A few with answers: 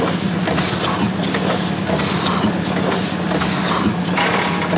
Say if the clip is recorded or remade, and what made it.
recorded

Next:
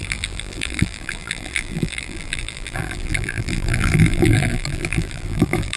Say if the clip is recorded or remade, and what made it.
remade, vocoder, BigVGAN v2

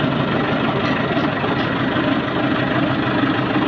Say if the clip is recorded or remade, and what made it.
recorded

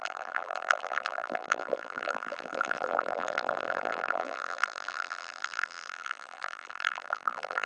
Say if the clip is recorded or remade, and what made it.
remade, vocoder, BigVGAN v2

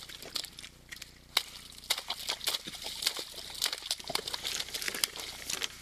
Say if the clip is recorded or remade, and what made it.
recorded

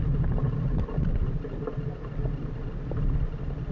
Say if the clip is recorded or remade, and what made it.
recorded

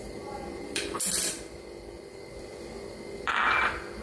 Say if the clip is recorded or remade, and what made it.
remade, vocoder, BigVGAN v2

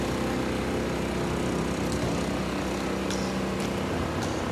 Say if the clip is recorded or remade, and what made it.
recorded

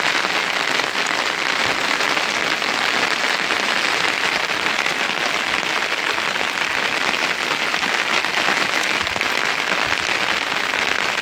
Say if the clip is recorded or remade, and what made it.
recorded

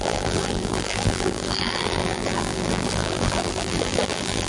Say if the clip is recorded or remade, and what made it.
remade, vocoder, BigVGAN v2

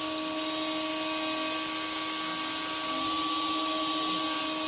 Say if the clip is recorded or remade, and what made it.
recorded